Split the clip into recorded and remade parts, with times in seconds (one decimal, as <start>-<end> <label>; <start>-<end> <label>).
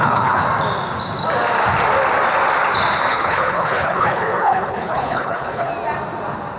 0.0-0.4 remade; 0.4-3.1 recorded; 3.1-5.7 remade; 5.7-6.6 recorded